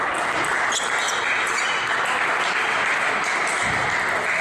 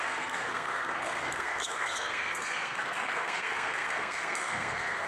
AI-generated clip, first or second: second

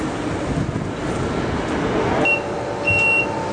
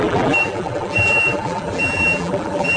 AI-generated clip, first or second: second